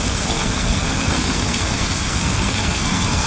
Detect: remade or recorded remade